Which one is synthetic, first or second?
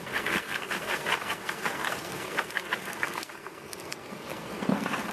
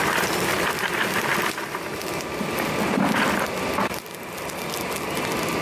first